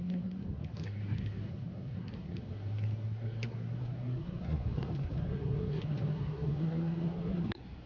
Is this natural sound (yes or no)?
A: no